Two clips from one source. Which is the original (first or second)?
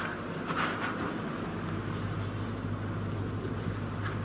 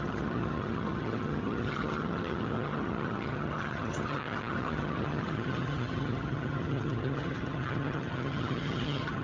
first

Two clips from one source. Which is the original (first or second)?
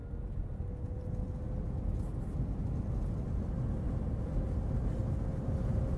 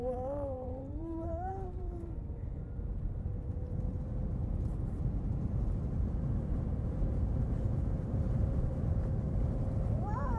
first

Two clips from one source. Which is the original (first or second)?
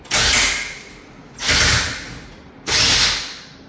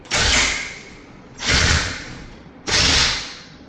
first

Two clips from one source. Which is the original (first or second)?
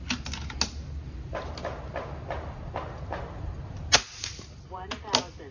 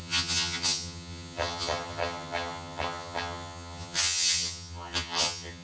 first